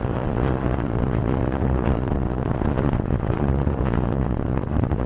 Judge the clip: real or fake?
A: fake